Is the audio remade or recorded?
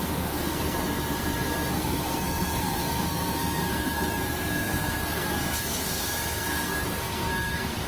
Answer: remade